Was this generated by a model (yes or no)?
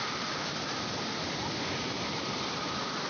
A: no